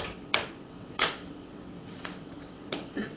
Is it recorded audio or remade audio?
remade